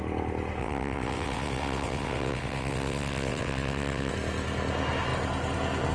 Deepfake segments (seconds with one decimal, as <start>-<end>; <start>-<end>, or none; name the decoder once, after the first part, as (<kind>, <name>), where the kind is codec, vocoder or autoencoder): 0.6-4.1 (vocoder, WaveNeXt)